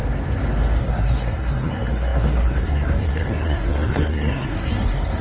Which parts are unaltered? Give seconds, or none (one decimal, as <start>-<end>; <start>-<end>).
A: 0.0-0.8